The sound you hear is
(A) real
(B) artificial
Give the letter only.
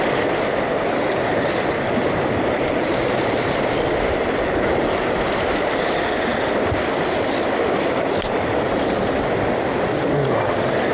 A